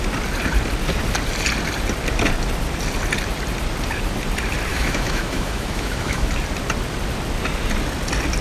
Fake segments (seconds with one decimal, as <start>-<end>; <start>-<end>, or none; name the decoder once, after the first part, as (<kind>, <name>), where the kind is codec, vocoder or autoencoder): 4.7-6.3 (autoencoder, DAC-VAE)